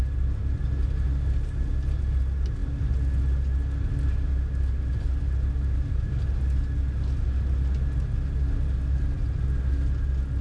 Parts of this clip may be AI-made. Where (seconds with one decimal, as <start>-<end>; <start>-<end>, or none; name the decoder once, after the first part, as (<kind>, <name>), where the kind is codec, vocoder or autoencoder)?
none